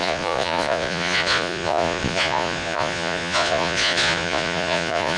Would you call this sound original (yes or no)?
no